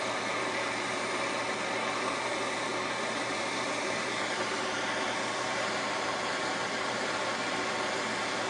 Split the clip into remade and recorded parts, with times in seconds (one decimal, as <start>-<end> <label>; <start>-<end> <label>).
0.0-2.7 recorded; 2.7-7.4 remade; 7.4-8.5 recorded